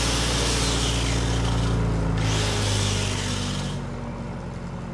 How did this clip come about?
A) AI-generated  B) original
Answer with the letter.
B